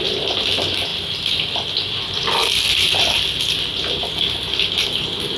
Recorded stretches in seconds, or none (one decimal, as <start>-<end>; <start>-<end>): 0.0-5.4